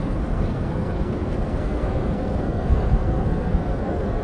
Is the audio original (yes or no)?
no